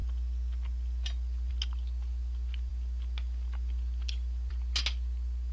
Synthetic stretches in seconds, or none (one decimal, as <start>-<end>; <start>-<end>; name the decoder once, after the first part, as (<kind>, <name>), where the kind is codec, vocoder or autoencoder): none

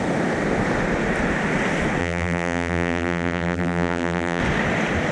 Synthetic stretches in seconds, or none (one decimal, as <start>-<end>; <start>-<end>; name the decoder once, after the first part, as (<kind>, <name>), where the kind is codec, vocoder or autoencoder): 2.0-4.4 (vocoder, BigVGAN v2)

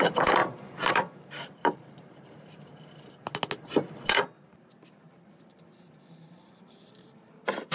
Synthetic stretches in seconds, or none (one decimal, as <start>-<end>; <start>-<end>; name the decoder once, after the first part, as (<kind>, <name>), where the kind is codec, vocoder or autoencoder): 0.0-2.7 (vocoder, BigVGAN v2); 4.9-7.7